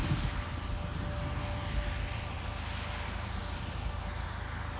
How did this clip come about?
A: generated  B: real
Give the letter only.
B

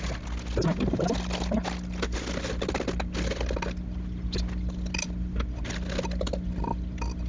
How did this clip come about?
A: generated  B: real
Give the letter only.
B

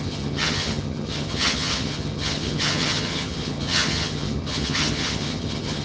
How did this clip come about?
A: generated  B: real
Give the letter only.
A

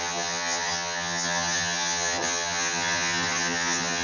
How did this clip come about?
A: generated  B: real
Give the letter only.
A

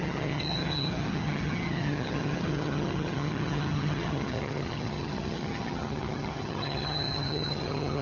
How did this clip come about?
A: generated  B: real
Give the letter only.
A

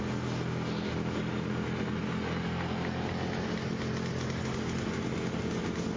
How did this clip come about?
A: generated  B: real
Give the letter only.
B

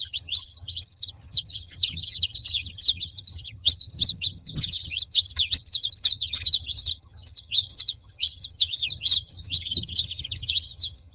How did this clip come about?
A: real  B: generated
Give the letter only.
B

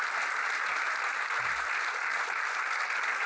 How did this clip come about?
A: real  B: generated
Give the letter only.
A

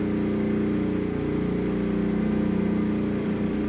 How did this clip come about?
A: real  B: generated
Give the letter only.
A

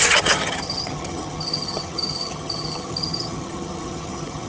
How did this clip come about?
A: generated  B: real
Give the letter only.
A